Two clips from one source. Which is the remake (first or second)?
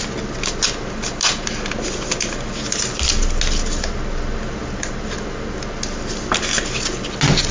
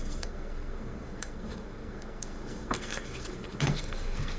second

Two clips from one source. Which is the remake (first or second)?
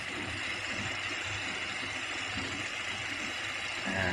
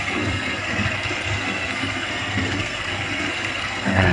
second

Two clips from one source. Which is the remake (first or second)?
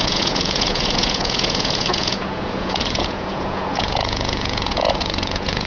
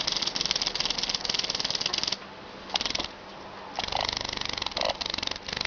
first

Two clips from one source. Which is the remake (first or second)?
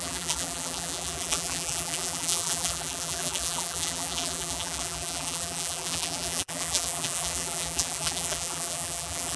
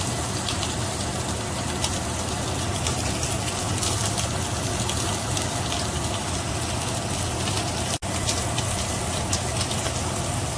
first